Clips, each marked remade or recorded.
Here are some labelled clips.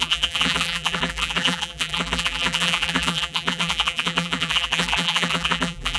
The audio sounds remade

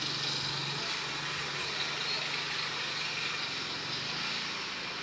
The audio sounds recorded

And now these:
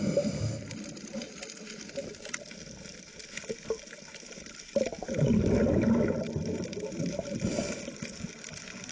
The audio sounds remade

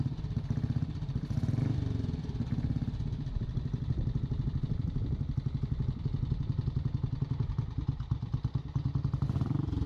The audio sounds remade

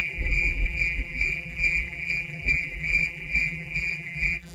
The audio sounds remade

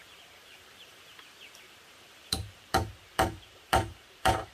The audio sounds remade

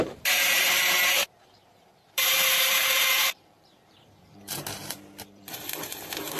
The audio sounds remade